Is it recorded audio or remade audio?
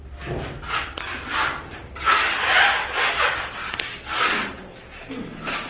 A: recorded